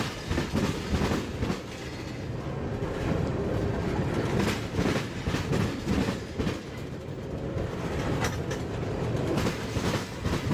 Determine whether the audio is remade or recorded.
recorded